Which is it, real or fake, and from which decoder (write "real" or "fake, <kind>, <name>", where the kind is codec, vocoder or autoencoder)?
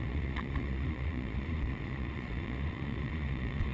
fake, vocoder, Vocos